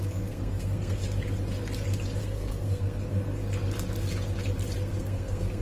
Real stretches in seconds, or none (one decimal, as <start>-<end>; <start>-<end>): 1.0-2.2; 3.4-4.8